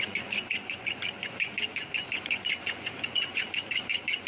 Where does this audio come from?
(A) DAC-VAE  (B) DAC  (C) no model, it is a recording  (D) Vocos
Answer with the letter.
D